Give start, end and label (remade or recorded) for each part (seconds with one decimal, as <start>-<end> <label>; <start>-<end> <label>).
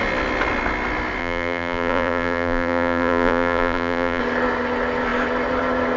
0.0-1.2 recorded; 1.2-4.2 remade; 4.2-6.0 recorded